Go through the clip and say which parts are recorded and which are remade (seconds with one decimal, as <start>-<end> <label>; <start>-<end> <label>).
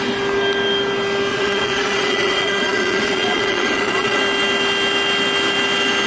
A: 0.0-1.3 recorded; 1.3-4.2 remade; 4.2-6.1 recorded